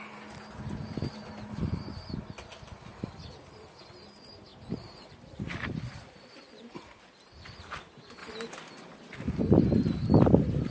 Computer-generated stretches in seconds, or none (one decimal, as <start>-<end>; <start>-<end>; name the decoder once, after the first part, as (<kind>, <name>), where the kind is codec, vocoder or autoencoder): 4.5-7.8 (vocoder, BigVGAN v2)